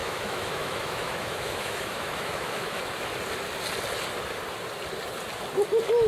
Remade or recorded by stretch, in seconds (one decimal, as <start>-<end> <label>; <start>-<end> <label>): 0.0-3.1 remade; 3.1-6.1 recorded